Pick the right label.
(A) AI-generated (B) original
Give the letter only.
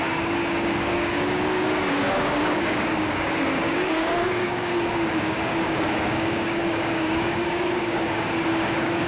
A